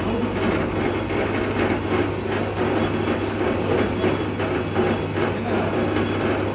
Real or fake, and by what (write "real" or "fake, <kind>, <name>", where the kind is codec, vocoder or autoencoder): real